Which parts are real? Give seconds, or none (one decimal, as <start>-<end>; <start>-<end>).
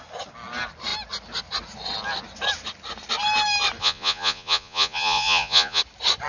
0.0-3.8; 5.8-6.3